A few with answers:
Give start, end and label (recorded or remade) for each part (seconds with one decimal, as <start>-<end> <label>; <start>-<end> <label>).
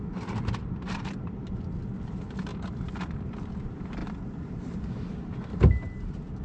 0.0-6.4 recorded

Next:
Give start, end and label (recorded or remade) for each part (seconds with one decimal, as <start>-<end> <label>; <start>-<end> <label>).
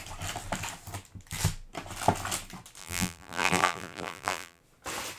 0.0-2.8 recorded; 2.8-4.6 remade; 4.6-5.2 recorded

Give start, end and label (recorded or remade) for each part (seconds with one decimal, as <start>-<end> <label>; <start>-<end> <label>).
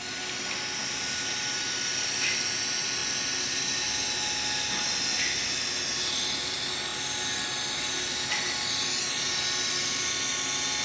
0.0-10.8 recorded